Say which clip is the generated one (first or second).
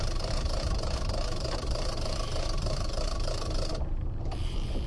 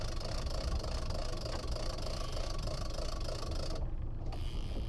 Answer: first